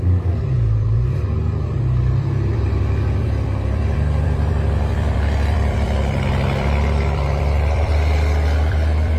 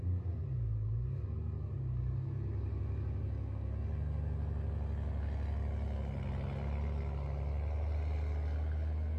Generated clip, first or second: first